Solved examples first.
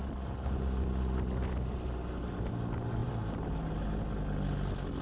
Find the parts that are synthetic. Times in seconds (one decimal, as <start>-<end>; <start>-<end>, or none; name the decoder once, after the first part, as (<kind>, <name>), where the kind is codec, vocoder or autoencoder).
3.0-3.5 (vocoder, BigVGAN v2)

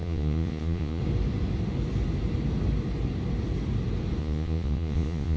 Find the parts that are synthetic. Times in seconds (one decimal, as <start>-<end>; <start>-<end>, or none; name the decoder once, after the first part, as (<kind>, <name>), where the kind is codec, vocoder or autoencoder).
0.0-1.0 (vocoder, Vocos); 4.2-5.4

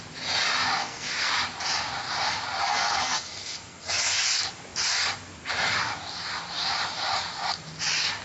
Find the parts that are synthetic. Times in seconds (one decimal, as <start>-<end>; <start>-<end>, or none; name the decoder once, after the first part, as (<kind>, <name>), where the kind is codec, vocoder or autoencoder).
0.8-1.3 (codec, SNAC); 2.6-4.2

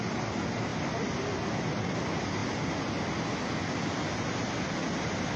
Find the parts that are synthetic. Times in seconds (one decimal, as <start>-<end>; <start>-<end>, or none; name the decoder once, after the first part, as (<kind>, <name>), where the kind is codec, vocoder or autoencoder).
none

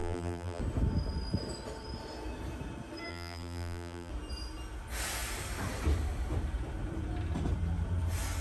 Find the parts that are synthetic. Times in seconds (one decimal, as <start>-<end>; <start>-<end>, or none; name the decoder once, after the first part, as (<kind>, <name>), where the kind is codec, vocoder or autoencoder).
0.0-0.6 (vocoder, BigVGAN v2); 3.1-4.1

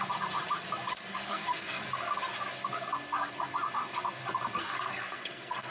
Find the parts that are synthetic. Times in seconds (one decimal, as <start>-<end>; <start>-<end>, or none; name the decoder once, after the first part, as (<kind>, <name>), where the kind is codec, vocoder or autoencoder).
1.1-1.8 (codec, SNAC); 4.6-5.7